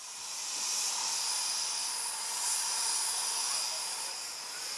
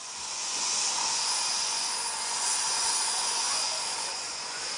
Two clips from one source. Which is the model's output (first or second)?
second